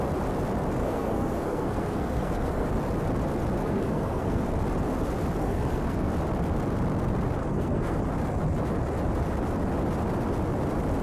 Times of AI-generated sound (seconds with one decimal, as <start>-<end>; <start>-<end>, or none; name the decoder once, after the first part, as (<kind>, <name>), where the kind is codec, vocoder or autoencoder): 0.8-2.7 (codec, SNAC); 3.6-4.5; 5.4-6.1; 7.4-8.0